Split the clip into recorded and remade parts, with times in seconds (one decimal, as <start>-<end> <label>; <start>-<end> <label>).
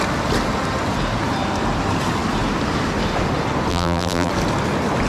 0.0-3.7 recorded; 3.7-4.3 remade; 4.3-5.1 recorded